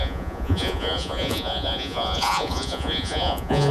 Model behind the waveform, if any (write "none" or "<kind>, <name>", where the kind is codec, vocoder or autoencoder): vocoder, Vocos